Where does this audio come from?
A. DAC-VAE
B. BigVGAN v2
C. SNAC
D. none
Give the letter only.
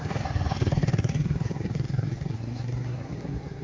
C